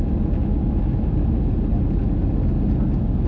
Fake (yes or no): no